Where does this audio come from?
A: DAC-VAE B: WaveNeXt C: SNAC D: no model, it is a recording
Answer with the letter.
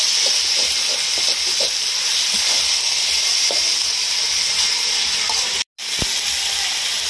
D